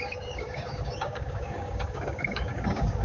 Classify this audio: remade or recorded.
remade